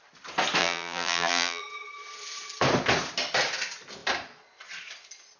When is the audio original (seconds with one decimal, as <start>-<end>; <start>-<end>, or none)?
0.0-0.6; 1.6-5.4

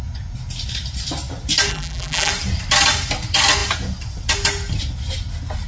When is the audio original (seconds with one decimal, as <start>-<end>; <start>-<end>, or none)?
0.0-1.7; 2.3-5.7

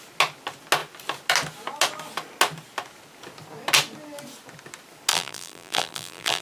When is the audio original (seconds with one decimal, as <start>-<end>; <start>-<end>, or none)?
0.0-5.1

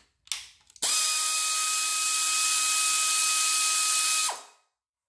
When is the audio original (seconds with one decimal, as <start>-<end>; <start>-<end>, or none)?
0.0-5.1